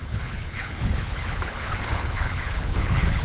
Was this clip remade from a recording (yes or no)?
yes